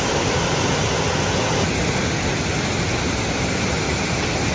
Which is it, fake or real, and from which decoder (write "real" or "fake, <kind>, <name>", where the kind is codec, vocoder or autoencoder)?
real